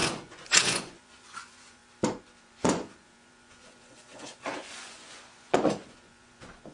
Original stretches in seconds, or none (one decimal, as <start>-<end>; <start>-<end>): 1.8-2.4